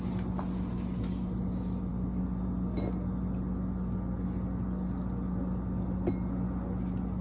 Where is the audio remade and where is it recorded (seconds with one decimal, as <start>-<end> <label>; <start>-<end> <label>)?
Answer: 0.0-7.2 recorded